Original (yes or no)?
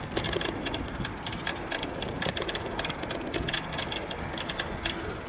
yes